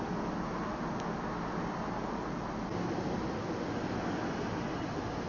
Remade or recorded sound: recorded